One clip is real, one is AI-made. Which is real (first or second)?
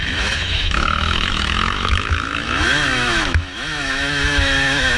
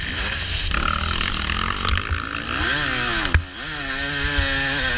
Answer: second